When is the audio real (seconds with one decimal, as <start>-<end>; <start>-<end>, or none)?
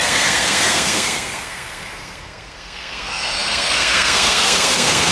none